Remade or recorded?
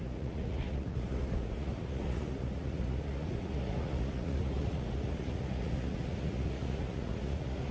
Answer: remade